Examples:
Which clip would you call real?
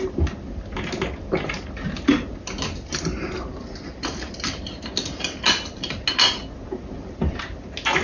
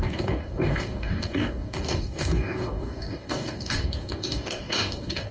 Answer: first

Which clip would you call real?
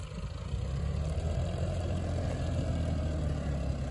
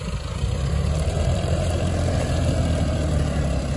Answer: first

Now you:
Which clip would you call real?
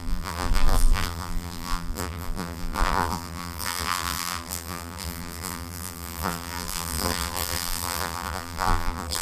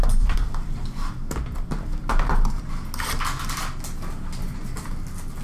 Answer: second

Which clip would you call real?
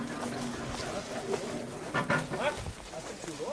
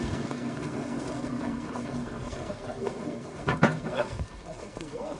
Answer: first